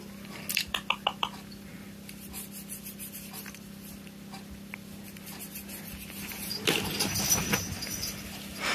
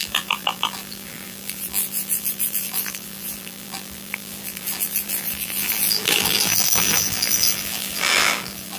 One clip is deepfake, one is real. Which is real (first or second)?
first